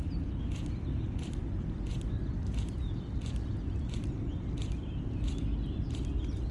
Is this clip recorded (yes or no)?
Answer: yes